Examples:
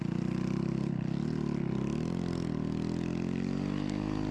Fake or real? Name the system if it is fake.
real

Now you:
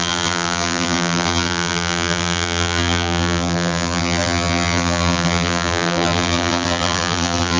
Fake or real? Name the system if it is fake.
fake, vocoder, BigVGAN v2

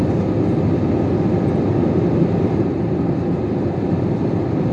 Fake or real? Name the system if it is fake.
real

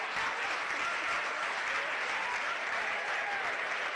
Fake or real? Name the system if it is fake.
real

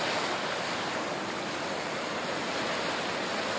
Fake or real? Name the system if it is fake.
real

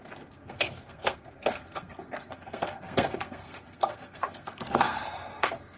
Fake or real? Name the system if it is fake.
fake, codec, SNAC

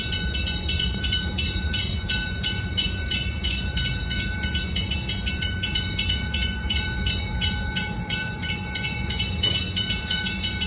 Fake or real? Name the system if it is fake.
fake, vocoder, Vocos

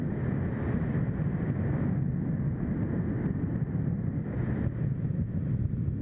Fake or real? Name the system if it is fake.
real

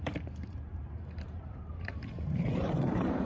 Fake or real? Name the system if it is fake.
fake, vocoder, BigVGAN v2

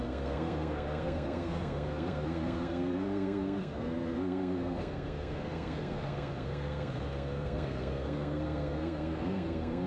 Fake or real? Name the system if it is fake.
fake, codec, SNAC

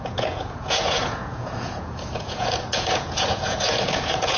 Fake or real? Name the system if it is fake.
fake, vocoder, Vocos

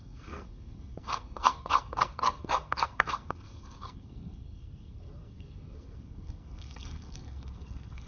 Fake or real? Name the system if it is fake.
fake, codec, SNAC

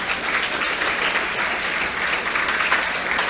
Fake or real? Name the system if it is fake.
real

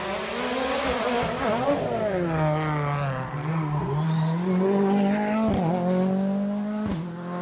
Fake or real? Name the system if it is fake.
real